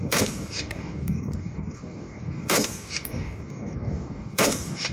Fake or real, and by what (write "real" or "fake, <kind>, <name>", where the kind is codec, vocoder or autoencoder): fake, codec, DAC